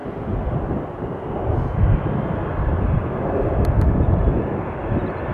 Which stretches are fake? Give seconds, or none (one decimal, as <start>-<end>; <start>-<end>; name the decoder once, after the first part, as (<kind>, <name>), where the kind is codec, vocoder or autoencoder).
none